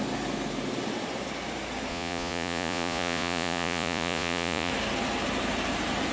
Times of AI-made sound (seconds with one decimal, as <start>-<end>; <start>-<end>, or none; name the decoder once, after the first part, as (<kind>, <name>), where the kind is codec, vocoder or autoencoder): 1.9-4.7 (vocoder, Vocos)